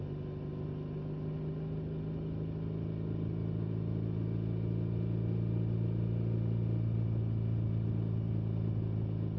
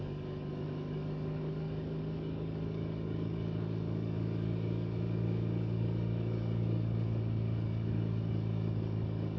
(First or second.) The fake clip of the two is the second